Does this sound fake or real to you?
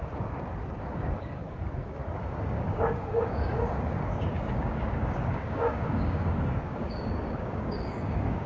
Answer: fake